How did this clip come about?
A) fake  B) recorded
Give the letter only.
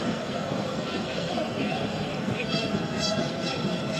A